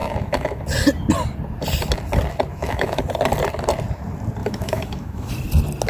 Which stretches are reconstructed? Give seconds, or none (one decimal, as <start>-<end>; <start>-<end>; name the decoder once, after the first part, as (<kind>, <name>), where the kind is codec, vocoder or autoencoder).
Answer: 0.0-0.6 (autoencoder, DAC-VAE); 2.5-3.0; 4.4-5.3